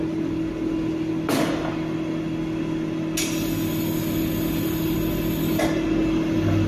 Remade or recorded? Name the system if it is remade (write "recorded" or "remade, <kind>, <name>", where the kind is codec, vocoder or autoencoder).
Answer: recorded